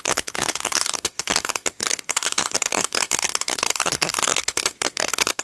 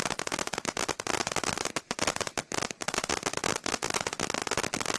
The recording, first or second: second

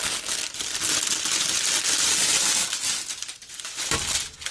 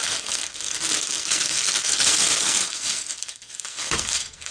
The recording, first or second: first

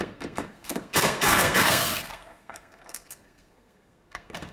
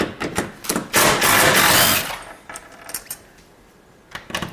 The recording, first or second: second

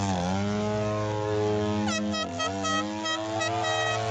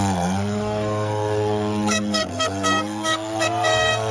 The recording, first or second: first